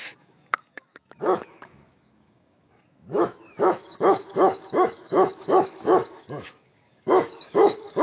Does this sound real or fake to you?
fake